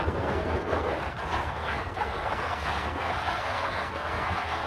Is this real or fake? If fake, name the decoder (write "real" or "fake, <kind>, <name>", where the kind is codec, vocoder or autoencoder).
fake, codec, SNAC